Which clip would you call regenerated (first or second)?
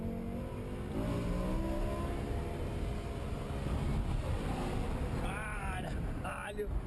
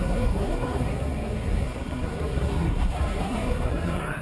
second